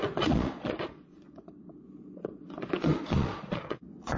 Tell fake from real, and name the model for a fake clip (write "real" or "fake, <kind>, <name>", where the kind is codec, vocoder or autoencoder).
fake, vocoder, Vocos